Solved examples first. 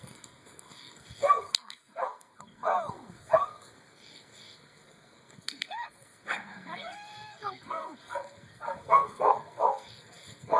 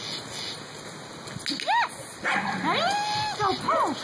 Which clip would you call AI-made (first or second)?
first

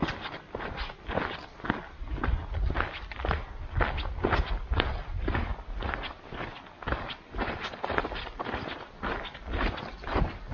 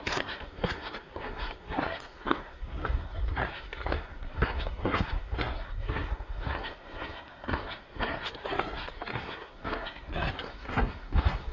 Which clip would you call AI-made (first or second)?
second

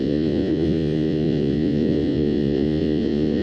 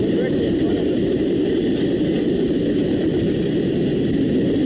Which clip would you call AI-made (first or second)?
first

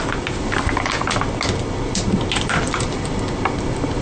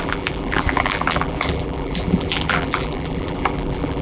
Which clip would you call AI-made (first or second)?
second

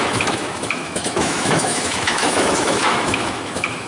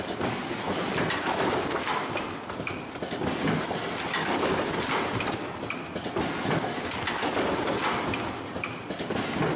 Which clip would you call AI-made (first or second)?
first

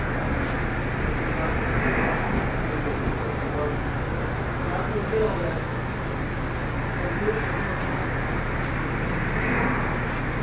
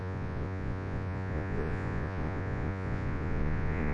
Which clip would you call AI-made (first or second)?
second